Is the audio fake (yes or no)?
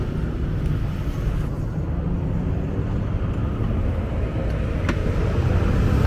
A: no